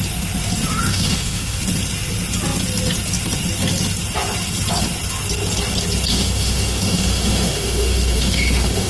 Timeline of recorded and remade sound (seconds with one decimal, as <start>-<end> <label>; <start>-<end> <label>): 0.0-0.9 recorded; 0.9-1.6 remade; 1.6-6.1 recorded; 6.1-8.9 remade